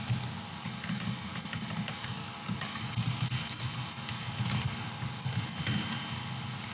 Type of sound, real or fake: real